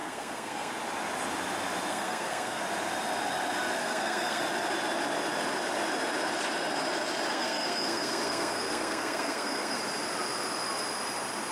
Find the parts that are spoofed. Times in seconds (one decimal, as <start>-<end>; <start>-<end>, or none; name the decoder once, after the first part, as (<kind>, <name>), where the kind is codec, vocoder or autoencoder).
0.0-0.7 (codec, SNAC); 1.9-2.6; 3.8-4.4; 7.3-9.8